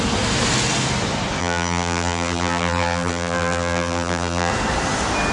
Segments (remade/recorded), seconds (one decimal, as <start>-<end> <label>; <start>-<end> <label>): 0.0-1.4 recorded; 1.4-4.5 remade; 4.5-5.3 recorded